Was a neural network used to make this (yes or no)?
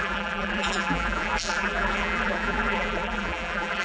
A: yes